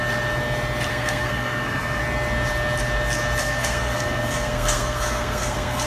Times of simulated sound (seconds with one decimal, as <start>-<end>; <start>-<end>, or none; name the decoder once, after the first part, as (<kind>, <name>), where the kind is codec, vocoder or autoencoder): 0.9-2.0 (codec, SNAC); 3.4-5.9